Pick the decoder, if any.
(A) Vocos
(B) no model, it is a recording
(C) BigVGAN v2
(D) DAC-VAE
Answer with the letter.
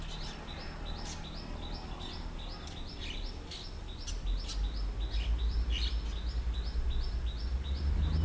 B